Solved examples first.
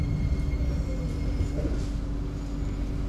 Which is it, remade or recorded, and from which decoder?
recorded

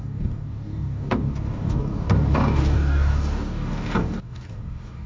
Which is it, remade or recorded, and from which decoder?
remade, codec, DAC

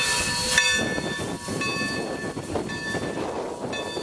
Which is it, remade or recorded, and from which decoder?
recorded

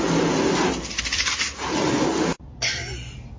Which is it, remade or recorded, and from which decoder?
recorded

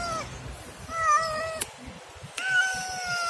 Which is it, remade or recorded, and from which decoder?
recorded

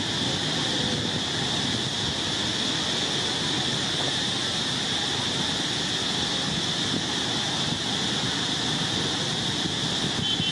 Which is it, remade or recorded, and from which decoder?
recorded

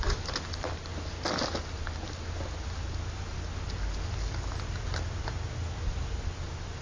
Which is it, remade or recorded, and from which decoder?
recorded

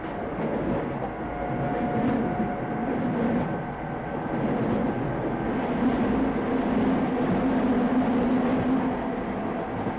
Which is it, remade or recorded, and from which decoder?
recorded